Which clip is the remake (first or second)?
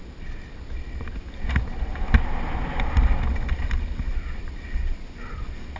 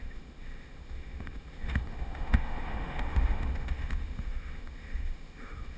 second